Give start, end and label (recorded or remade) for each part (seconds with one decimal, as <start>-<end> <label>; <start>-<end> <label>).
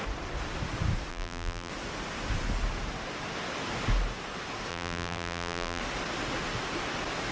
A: 0.0-1.1 recorded; 1.1-1.7 remade; 1.7-4.7 recorded; 4.7-5.8 remade; 5.8-7.3 recorded